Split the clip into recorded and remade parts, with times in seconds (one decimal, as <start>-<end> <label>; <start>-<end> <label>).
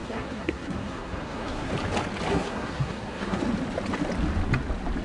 0.0-1.7 remade; 1.7-2.3 recorded; 2.3-3.4 remade; 3.4-5.0 recorded